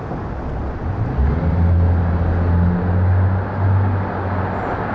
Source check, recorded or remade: recorded